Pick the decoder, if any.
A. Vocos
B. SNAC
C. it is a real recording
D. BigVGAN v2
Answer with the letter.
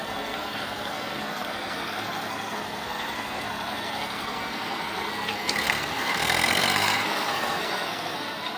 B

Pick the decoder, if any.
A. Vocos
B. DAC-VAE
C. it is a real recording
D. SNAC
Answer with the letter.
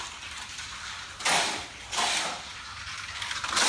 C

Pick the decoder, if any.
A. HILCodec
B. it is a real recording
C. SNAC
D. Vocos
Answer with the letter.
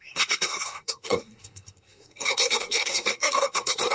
C